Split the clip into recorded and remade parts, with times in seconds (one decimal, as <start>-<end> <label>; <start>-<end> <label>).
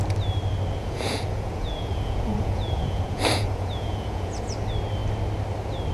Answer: 0.0-0.8 recorded; 0.8-4.3 remade; 4.3-5.9 recorded